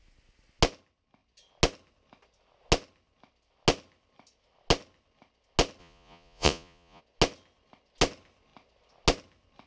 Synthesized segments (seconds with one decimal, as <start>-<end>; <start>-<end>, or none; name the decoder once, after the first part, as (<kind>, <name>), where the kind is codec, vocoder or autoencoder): 5.8-7.0 (vocoder, Vocos)